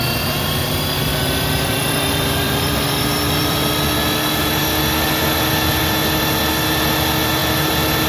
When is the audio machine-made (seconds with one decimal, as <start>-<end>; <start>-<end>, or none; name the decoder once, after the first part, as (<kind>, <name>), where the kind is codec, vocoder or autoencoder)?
1.1-3.7 (vocoder, BigVGAN v2)